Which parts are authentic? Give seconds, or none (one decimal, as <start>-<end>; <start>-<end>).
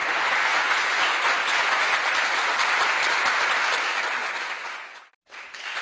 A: 1.9-4.2; 5.0-5.8